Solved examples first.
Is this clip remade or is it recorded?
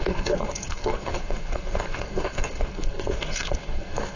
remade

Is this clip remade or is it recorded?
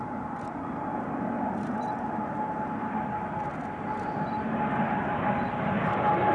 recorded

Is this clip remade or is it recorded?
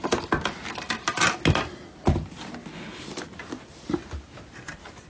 recorded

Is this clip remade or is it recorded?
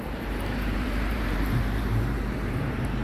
remade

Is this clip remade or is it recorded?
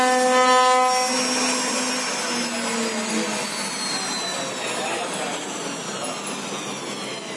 recorded